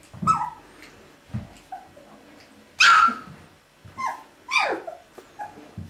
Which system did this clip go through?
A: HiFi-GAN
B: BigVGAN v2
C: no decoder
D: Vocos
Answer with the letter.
C